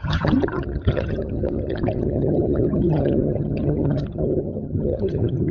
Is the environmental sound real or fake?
fake